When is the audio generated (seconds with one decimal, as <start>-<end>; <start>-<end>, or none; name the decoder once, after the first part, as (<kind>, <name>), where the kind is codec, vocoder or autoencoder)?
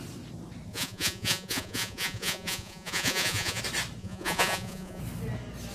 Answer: 0.7-3.6 (vocoder, Vocos); 4.0-5.0